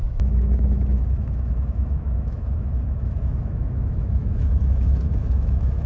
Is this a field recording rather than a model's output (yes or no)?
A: no